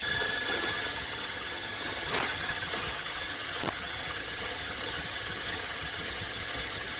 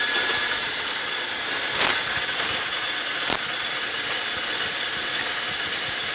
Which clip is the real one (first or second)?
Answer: second